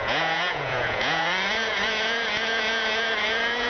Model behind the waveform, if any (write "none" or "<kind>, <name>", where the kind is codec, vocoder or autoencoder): vocoder, Vocos